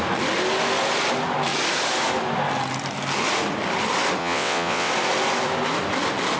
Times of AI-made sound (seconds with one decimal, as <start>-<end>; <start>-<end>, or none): 4.2-4.9